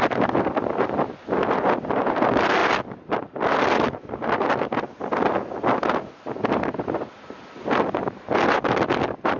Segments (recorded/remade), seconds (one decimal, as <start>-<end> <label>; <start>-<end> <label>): 0.0-9.4 recorded